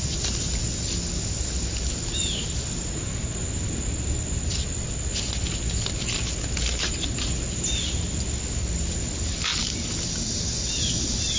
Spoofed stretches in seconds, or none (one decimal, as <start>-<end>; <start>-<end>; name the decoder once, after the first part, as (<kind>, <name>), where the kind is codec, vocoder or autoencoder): none